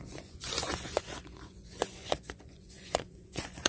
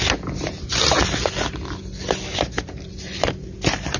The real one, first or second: second